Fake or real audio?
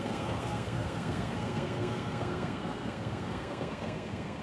fake